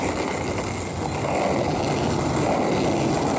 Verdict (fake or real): real